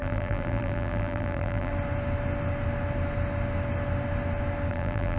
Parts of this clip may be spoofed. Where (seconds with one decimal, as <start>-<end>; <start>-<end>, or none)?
0.0-1.7; 4.7-5.2